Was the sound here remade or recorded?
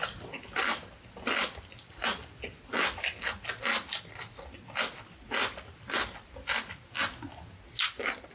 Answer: recorded